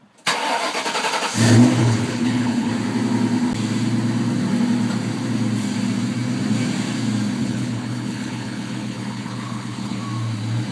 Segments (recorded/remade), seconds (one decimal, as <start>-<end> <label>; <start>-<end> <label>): 0.0-1.8 recorded; 1.8-2.7 remade; 2.7-7.4 recorded; 7.4-10.0 remade; 10.0-10.7 recorded